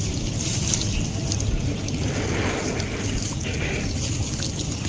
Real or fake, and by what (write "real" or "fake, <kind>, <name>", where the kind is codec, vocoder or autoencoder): real